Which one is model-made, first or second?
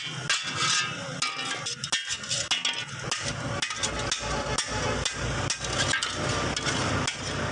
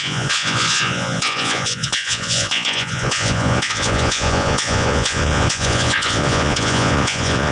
second